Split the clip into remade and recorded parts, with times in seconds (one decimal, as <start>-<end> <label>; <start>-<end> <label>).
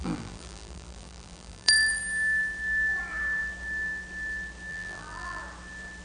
0.0-2.0 remade; 2.0-4.7 recorded; 4.7-5.4 remade; 5.4-6.0 recorded